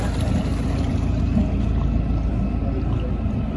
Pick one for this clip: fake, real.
real